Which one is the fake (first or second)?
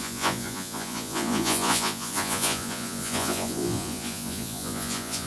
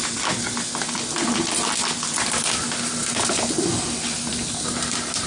first